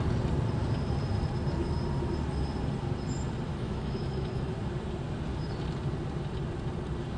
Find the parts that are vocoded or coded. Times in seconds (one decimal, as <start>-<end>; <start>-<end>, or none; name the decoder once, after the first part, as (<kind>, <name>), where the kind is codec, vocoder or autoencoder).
3.5-4.5 (autoencoder, DAC-VAE)